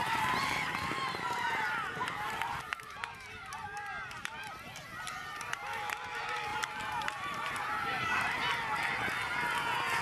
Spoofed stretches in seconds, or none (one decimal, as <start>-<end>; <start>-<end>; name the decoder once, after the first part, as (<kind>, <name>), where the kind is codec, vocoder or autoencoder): 0.0-2.6 (vocoder, BigVGAN v2); 6.5-8.4